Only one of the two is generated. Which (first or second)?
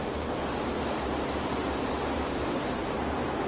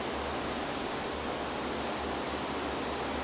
first